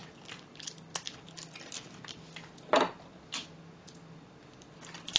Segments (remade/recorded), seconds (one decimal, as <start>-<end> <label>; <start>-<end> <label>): 0.0-5.2 recorded